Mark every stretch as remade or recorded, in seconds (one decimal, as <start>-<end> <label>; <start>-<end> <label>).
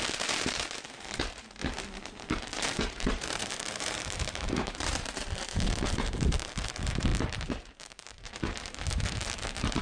0.0-1.6 remade; 1.6-2.3 recorded; 2.3-9.8 remade